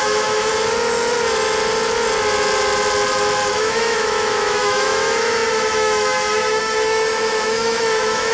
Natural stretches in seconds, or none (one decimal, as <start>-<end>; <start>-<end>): 0.5-3.5